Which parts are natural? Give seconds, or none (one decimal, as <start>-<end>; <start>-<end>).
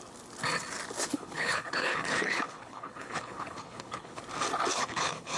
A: 0.0-1.0; 4.2-4.7